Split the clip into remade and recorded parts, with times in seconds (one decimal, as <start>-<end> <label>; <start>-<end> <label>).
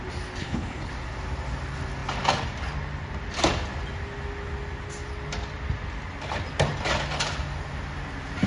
0.0-0.4 recorded; 0.4-0.9 remade; 0.9-8.5 recorded